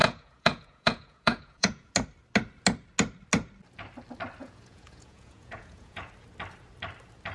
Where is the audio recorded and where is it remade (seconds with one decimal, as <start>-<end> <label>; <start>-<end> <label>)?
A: 0.0-1.9 remade; 1.9-4.4 recorded; 4.4-6.1 remade; 6.1-7.3 recorded